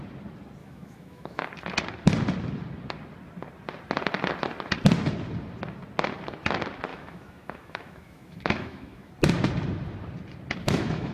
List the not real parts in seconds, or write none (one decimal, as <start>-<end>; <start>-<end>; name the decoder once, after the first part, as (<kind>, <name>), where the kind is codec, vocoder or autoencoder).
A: 0.6-1.5 (autoencoder, DAC-VAE); 6.9-9.1; 10.6-11.1